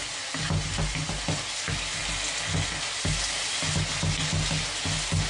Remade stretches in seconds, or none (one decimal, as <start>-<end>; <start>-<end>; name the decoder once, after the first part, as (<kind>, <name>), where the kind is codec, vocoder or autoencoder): none